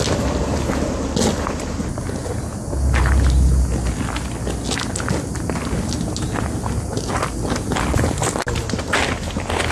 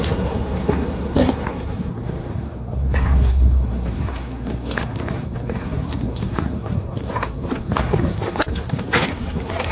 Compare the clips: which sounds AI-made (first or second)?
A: second